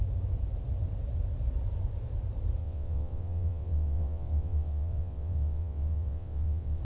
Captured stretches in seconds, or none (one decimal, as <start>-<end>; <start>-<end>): 0.0-2.6